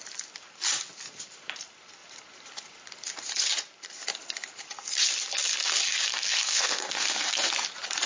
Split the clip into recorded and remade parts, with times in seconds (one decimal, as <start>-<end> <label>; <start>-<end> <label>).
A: 0.0-6.1 recorded; 6.1-7.5 remade; 7.5-8.1 recorded